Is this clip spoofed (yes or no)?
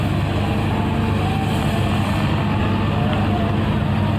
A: no